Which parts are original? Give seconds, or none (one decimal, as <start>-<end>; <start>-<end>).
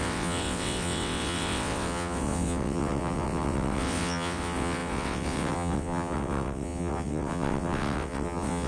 none